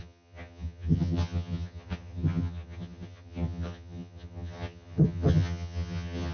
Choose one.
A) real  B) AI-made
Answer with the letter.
B